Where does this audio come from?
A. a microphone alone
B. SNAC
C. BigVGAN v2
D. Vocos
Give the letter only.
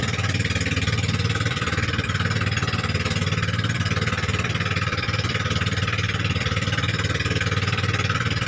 C